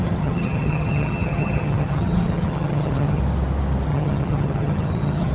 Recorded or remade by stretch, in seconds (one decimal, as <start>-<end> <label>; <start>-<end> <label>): 0.0-3.2 remade; 3.2-3.9 recorded; 3.9-5.3 remade